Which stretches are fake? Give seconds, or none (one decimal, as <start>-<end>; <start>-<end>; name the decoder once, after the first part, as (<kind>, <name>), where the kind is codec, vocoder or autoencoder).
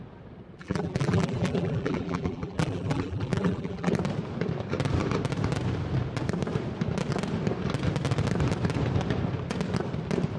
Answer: 0.6-3.9 (vocoder, BigVGAN v2)